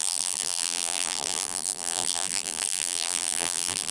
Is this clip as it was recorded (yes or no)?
no